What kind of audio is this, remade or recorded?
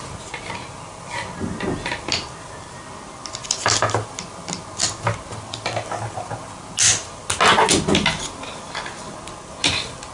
recorded